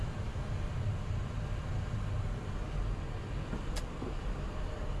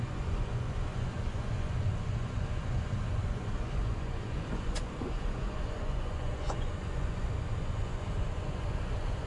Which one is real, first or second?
first